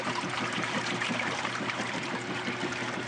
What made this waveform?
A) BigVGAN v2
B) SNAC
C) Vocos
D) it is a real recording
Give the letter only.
A